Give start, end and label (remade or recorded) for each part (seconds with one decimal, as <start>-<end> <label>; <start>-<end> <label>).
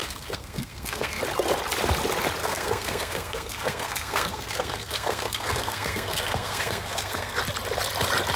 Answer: 0.0-1.2 remade; 1.2-2.4 recorded; 2.4-7.4 remade; 7.4-8.4 recorded